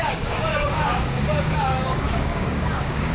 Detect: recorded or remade remade